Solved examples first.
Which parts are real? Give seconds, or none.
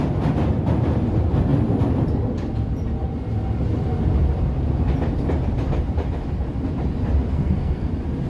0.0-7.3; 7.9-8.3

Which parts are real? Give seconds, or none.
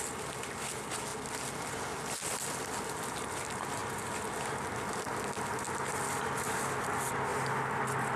0.0-8.2